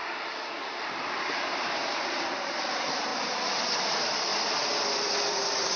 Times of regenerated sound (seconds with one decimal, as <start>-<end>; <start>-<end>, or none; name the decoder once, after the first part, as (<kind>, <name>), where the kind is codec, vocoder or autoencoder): 0.0-4.3 (vocoder, BigVGAN v2); 5.3-5.8

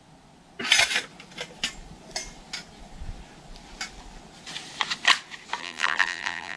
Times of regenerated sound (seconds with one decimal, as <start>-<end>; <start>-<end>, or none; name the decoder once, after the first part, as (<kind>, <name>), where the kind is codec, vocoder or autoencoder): 5.6-6.6 (vocoder, BigVGAN v2)